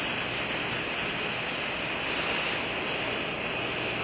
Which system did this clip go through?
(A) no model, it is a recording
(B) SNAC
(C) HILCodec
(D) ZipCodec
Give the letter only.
A